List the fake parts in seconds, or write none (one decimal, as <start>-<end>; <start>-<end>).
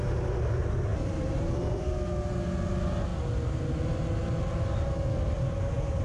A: 0.9-1.5